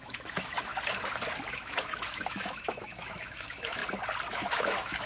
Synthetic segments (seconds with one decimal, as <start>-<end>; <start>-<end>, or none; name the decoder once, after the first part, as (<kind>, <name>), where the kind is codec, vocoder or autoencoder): 0.0-0.7 (autoencoder, DAC-VAE); 1.5-3.8; 4.3-5.1